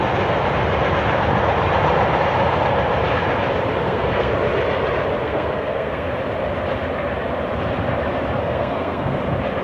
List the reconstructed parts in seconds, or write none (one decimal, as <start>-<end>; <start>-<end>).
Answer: 3.8-4.3; 5.2-6.2; 8.4-9.2